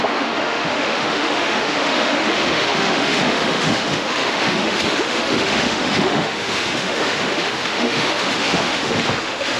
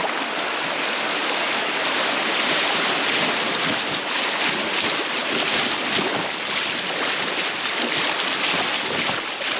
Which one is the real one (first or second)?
second